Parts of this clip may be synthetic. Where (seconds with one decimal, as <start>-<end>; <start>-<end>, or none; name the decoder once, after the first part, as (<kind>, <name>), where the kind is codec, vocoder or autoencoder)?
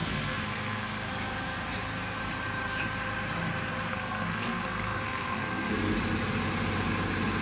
0.0-1.1 (codec, SNAC); 3.9-5.7